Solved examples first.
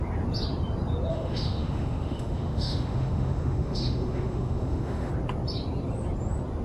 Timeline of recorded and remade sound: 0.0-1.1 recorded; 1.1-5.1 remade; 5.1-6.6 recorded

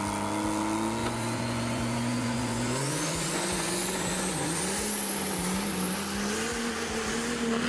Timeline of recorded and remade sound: 0.0-1.0 recorded; 1.0-4.6 remade; 4.6-7.7 recorded

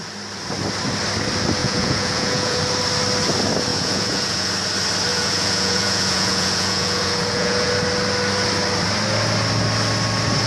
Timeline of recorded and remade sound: 0.0-1.6 recorded; 1.6-2.6 remade; 2.6-3.7 recorded; 3.7-4.5 remade; 4.5-5.1 recorded; 5.1-7.7 remade; 7.7-10.5 recorded

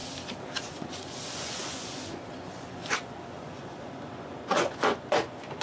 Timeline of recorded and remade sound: 0.0-0.6 recorded; 0.6-5.6 remade

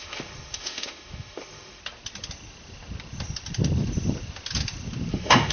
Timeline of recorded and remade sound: 0.0-1.8 remade; 1.8-5.1 recorded; 5.1-5.5 remade

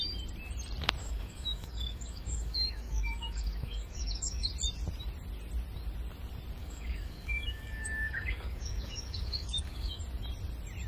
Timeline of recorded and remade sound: 0.0-1.0 recorded; 1.0-4.5 remade; 4.5-6.6 recorded; 6.6-10.0 remade; 10.0-10.9 recorded

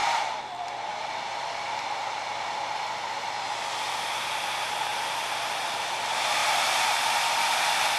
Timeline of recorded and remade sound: 0.0-2.3 remade; 2.3-8.0 recorded

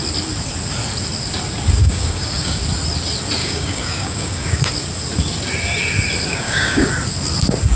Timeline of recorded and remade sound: 0.0-1.8 recorded; 1.8-2.6 remade; 2.6-3.4 recorded; 3.4-4.7 remade; 4.7-6.3 recorded; 6.3-6.9 remade; 6.9-7.8 recorded